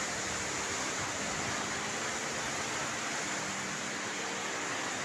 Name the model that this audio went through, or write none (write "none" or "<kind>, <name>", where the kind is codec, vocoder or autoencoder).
none